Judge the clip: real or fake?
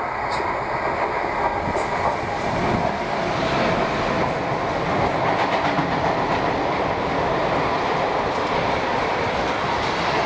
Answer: real